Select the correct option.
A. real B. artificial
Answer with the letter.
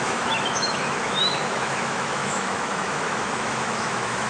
B